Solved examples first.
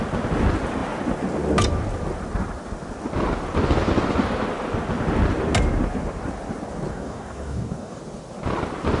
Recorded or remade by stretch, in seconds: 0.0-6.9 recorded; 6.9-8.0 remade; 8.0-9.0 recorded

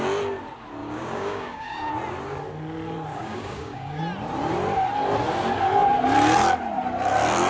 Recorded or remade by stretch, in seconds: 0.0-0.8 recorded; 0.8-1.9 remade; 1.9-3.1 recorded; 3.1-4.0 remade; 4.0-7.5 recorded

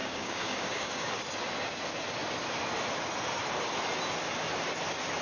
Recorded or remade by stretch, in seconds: 0.0-1.2 remade; 1.2-5.2 recorded

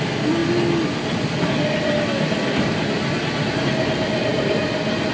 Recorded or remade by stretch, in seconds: 0.0-5.1 recorded

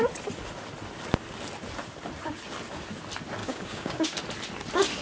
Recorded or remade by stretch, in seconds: 0.0-3.4 recorded; 3.4-4.2 remade; 4.2-5.0 recorded

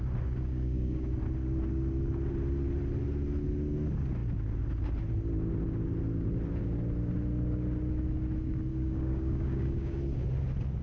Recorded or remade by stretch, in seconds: 0.0-0.5 recorded; 0.5-1.1 remade; 1.1-8.7 recorded; 8.7-10.0 remade; 10.0-10.8 recorded